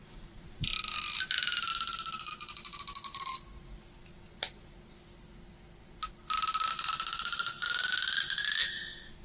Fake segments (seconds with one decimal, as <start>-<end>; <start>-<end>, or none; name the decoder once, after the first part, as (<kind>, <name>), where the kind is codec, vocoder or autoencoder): 0.0-0.7 (vocoder, Vocos)